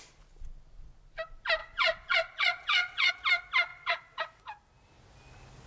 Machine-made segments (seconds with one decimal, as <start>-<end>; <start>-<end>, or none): 1.6-3.1; 3.7-4.4